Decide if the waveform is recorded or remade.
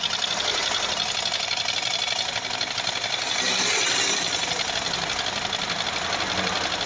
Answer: recorded